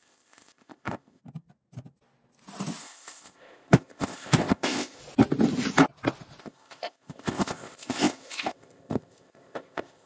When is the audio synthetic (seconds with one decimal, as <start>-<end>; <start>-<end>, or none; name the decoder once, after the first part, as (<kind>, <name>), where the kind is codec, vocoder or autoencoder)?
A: 0.0-1.2 (codec, ZipCodec); 2.8-5.0; 6.4-10.1

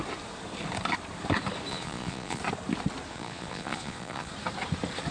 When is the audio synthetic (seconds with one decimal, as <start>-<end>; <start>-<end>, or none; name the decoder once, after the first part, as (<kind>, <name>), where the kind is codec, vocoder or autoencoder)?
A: 1.7-2.4 (vocoder, Vocos); 3.1-4.3

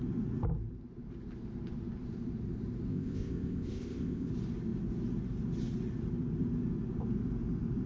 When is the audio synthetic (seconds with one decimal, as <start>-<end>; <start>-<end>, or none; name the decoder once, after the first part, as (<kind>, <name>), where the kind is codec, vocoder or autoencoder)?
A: 2.9-4.3 (codec, ZipCodec)

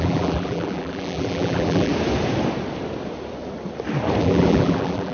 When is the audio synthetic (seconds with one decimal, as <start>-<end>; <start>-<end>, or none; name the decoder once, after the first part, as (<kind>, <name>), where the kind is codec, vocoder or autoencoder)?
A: 0.0-1.9 (vocoder, BigVGAN v2); 4.2-5.1

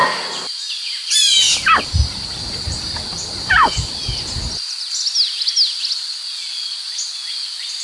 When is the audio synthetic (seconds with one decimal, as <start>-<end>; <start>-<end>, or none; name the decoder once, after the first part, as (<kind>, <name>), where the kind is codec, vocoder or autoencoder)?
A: none

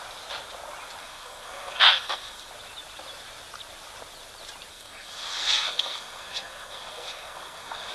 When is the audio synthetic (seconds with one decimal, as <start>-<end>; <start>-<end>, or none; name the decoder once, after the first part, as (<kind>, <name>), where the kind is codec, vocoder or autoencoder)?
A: 1.0-2.5 (codec, SNAC); 4.7-7.9